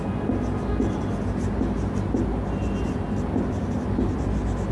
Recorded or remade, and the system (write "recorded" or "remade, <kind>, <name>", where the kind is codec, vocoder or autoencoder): recorded